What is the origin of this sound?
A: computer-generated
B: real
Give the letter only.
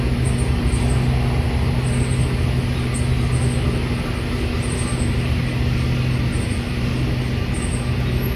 B